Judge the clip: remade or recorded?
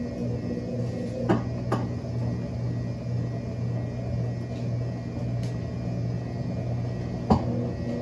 recorded